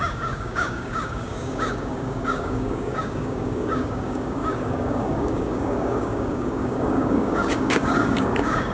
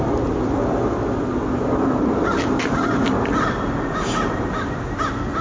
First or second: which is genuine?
second